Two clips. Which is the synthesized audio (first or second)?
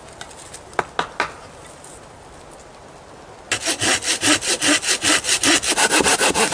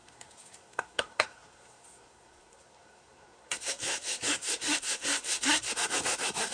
second